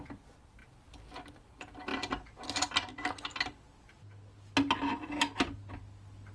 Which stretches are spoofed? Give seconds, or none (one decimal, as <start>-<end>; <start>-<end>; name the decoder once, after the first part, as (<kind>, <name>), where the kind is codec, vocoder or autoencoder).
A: none